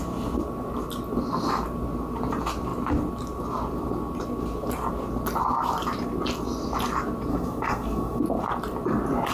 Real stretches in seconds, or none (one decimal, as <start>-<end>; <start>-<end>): 0.0-7.3; 8.2-9.3